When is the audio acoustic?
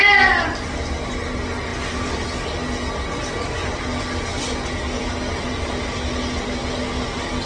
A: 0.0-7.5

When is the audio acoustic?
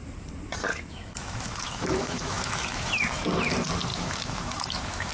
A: 0.0-0.7; 2.9-3.9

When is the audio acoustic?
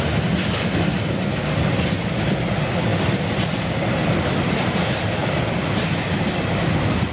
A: 0.0-7.1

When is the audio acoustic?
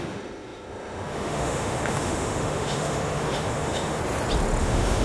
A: 4.0-4.6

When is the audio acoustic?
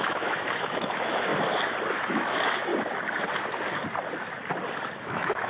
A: 1.3-1.9; 2.7-5.0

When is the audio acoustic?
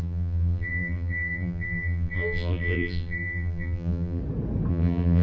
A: 4.2-4.7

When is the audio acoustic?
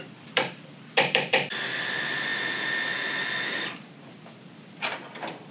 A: 2.3-5.5